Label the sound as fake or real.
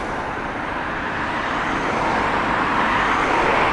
real